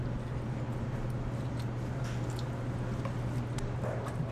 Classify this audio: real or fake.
real